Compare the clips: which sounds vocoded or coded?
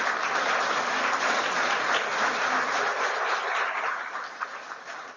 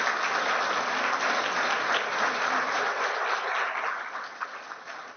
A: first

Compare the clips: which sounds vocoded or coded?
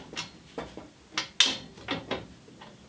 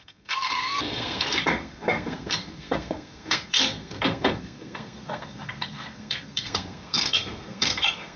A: second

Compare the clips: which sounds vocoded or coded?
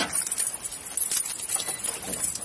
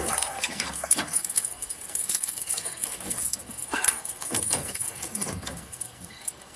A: second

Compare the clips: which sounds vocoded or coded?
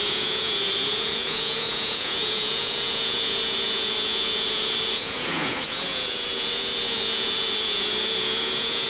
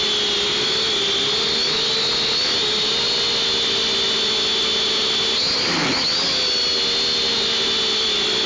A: first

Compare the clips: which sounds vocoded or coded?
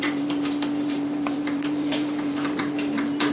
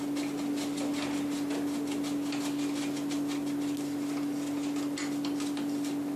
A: first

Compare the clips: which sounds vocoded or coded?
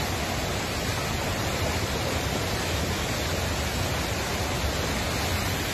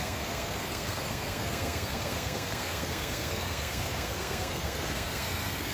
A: second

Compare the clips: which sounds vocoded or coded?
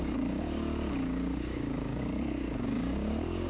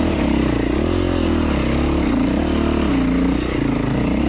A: first